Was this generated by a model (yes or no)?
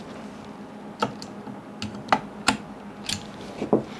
no